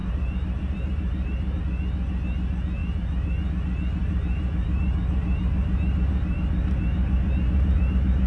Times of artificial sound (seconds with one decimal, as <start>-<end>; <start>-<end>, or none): 0.0-1.6; 2.8-3.5; 4.0-7.8